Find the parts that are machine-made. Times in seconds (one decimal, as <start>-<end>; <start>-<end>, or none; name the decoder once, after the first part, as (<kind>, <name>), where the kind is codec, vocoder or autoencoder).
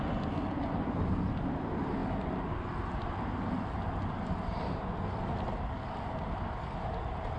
none